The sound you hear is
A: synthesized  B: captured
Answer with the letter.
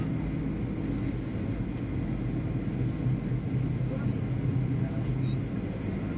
B